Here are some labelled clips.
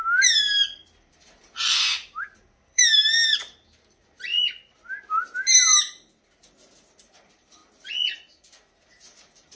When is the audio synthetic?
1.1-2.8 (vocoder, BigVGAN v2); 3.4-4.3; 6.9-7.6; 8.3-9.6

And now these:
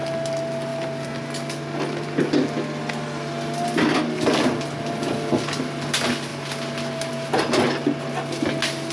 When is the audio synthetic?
none

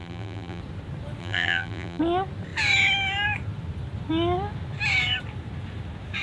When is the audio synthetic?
0.0-0.6 (vocoder, BigVGAN v2); 1.2-2.0

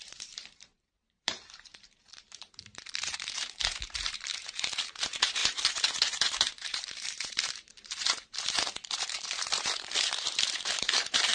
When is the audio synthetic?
0.0-11.3 (vocoder, BigVGAN v2)

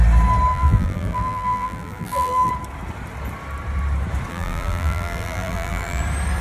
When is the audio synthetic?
0.5-2.5 (vocoder, BigVGAN v2); 4.3-6.0

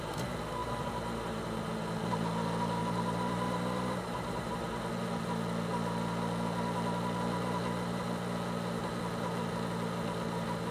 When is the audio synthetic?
0.6-1.7 (vocoder, BigVGAN v2); 2.8-4.8

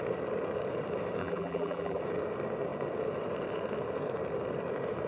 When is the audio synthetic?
1.2-2.0 (vocoder, BigVGAN v2)

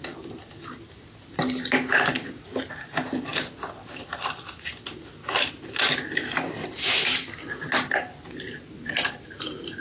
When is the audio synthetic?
none